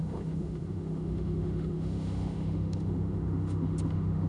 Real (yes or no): no